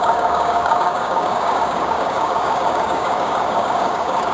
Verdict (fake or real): fake